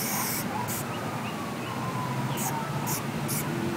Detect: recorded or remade recorded